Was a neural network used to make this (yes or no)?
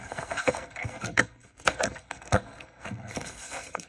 yes